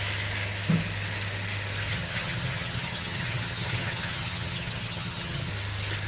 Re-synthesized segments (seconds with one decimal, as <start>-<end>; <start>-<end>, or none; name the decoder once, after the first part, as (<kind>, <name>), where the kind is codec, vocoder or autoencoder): 1.9-5.5 (vocoder, HiFi-GAN)